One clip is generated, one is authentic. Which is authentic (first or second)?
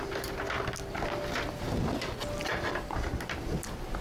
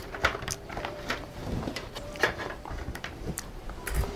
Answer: first